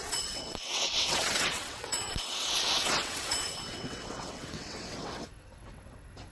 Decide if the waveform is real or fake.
fake